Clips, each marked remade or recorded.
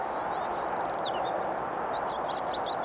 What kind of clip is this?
recorded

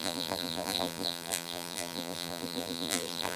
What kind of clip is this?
remade